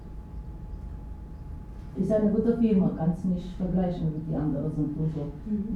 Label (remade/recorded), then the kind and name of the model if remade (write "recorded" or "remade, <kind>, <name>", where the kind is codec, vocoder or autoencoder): recorded